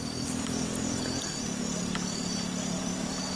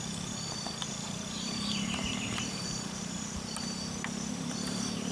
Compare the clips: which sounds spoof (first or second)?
second